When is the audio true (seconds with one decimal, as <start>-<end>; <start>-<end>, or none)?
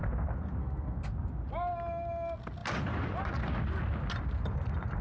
0.0-0.6; 1.1-5.0